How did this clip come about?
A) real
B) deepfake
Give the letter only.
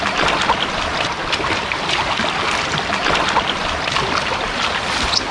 A